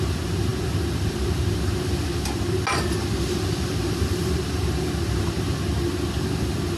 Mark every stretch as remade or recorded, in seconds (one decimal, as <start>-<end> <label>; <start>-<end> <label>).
0.0-6.8 recorded